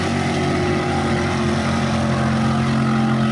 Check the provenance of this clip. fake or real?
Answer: real